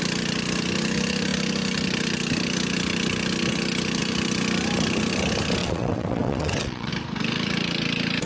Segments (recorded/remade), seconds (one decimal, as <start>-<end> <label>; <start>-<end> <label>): 0.0-5.6 recorded; 5.6-6.9 remade; 6.9-8.3 recorded